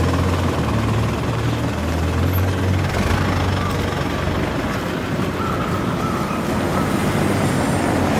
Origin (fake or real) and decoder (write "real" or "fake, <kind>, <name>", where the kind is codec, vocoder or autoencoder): real